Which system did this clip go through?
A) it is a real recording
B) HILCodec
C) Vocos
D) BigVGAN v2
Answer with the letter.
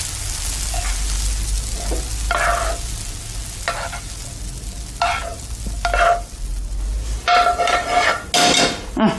A